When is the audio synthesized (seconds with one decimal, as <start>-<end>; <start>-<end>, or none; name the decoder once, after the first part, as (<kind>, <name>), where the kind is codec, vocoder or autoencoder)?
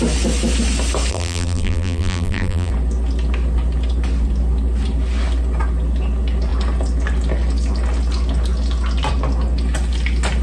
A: 1.1-2.7 (vocoder, BigVGAN v2)